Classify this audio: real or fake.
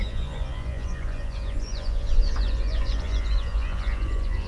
fake